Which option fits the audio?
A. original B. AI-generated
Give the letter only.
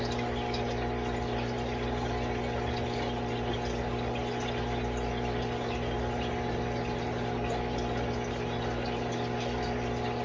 A